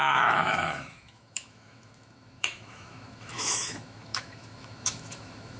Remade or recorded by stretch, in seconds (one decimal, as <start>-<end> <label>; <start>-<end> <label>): 0.0-5.6 remade